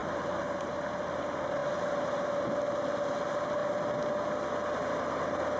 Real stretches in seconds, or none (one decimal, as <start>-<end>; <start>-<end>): 0.7-5.6